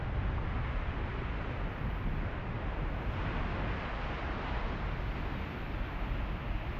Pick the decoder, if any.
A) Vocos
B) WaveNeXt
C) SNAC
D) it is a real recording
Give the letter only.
D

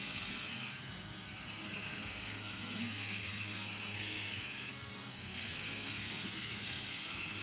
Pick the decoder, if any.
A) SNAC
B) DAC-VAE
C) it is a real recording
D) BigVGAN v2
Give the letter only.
A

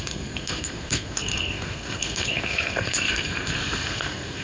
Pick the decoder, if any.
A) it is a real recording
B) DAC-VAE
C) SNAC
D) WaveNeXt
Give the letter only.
C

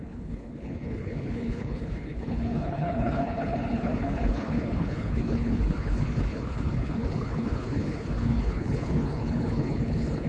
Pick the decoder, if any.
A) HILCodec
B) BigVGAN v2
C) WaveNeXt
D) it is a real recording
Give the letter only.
A